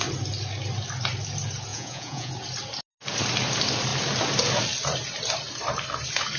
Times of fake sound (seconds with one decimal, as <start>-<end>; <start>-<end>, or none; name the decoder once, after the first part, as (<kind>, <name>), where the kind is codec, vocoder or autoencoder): 1.7-2.3 (vocoder, Vocos)